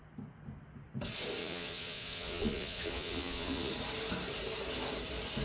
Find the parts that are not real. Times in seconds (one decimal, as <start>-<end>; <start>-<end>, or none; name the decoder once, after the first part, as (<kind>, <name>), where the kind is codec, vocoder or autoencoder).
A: 1.4-3.7 (vocoder, Vocos)